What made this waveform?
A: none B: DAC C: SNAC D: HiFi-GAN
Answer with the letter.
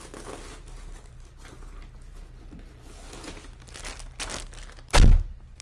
A